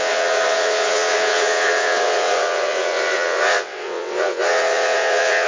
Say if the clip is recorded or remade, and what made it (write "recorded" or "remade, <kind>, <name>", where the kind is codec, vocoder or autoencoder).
remade, vocoder, WaveNeXt